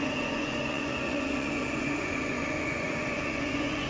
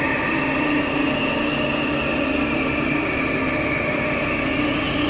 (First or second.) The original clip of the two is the second